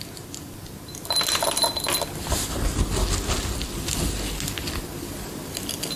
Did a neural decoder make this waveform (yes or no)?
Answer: no